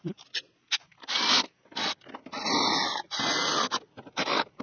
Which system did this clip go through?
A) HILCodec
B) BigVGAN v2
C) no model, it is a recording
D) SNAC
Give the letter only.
C